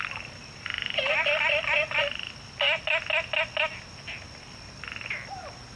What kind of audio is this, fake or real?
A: real